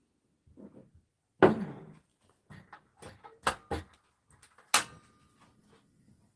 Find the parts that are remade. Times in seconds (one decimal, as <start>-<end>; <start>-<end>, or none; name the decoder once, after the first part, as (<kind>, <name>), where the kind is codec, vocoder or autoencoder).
none